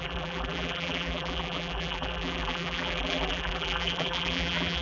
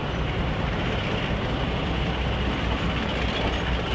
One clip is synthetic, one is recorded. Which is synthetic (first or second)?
first